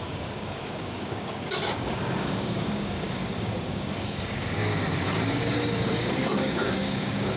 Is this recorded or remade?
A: remade